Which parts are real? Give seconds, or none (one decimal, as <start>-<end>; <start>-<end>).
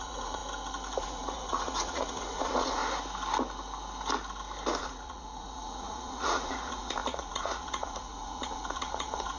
0.4-1.0; 2.8-4.8